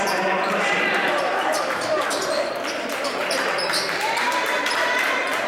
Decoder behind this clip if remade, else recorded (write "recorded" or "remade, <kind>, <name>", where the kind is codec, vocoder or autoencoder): remade, vocoder, BigVGAN v2